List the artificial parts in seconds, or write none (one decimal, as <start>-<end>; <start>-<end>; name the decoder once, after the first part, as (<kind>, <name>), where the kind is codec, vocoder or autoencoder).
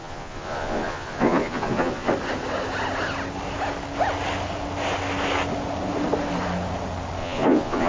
0.0-2.1 (vocoder, Vocos); 7.2-7.9